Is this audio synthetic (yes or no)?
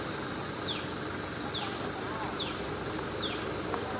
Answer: no